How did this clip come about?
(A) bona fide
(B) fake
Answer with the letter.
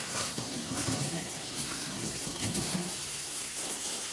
B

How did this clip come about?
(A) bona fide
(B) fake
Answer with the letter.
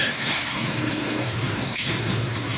B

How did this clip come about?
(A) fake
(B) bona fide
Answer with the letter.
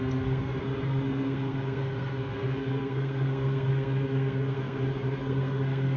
A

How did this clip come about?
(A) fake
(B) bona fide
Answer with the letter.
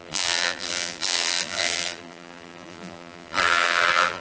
A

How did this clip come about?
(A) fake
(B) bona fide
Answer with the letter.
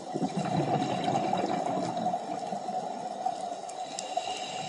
B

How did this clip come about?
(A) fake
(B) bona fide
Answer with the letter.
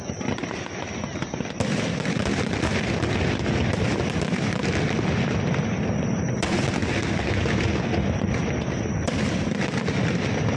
B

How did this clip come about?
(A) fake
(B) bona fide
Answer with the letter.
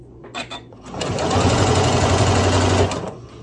A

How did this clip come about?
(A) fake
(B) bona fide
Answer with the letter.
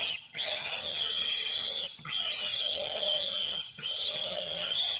A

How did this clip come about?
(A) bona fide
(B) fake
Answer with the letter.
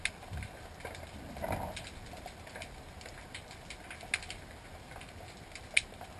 A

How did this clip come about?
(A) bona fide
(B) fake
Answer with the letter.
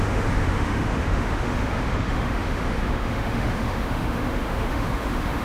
B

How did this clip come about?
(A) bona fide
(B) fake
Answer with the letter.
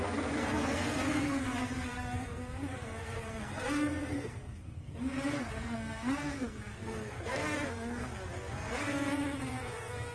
B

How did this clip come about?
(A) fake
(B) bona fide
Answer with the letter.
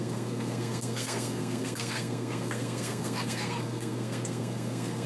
A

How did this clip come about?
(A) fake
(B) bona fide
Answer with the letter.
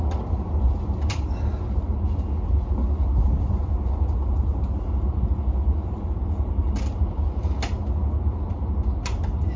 B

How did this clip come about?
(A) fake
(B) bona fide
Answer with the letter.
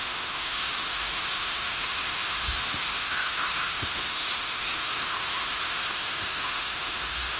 A